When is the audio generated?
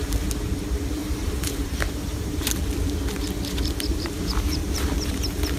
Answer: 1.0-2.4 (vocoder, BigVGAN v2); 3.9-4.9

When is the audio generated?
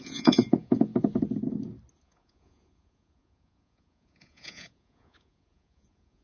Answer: 0.0-0.9 (vocoder, Vocos); 2.0-6.2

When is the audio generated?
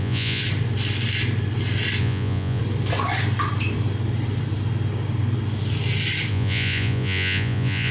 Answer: 0.0-0.4 (vocoder, Vocos); 2.0-2.6; 6.3-7.9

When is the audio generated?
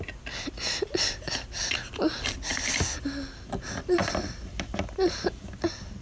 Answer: 2.5-5.4 (vocoder, BigVGAN v2)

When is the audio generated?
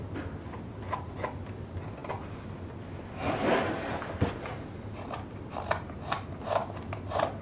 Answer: 0.0-2.0 (vocoder, BigVGAN v2); 6.1-6.6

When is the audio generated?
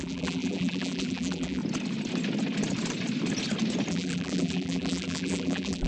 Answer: 0.0-1.6 (vocoder, BigVGAN v2); 3.9-5.9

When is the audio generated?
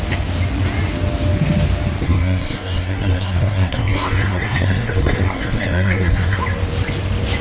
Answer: 2.0-6.4 (codec, SNAC)